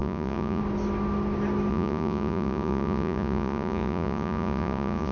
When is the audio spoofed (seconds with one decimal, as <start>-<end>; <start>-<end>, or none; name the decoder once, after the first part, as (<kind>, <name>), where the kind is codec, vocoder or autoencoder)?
0.0-0.6 (vocoder, Vocos); 1.7-5.1